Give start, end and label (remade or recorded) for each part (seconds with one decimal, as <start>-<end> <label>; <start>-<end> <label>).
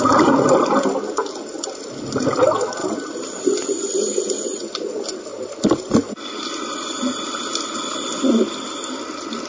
0.0-9.5 recorded